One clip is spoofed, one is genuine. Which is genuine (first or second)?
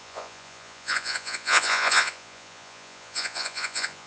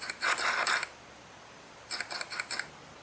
second